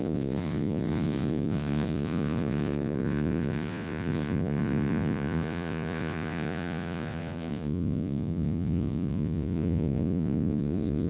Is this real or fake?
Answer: fake